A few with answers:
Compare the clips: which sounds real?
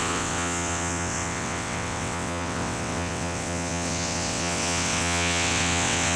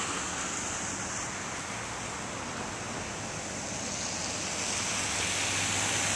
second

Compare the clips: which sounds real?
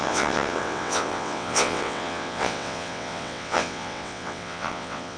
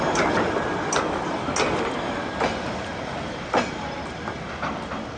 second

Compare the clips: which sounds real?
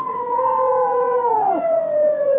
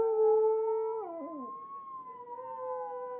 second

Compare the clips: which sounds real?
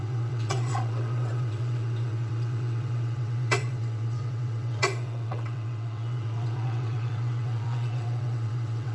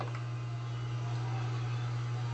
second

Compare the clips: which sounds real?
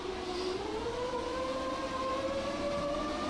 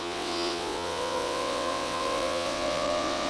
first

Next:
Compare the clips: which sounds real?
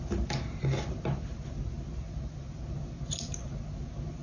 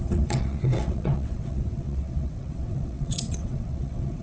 first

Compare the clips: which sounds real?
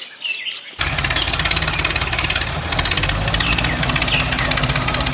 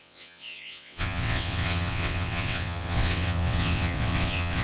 first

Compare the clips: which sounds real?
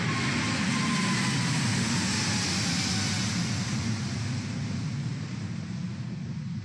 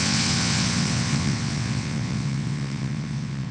first